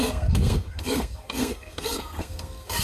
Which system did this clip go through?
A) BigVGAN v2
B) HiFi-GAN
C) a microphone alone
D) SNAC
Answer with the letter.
D